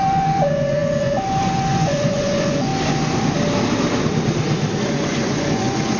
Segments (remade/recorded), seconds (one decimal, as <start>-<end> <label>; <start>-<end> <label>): 0.0-2.7 remade; 2.7-4.8 recorded; 4.8-6.0 remade